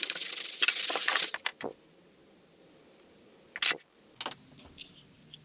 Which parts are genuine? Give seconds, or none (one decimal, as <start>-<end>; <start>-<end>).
0.0-5.4